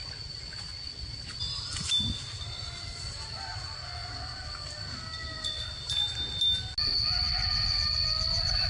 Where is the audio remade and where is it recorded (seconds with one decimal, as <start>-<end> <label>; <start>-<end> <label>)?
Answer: 0.0-8.7 recorded

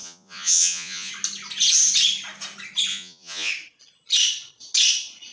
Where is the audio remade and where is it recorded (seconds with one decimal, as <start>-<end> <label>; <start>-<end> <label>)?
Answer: 0.0-1.1 remade; 1.1-2.9 recorded; 2.9-3.5 remade; 3.5-5.3 recorded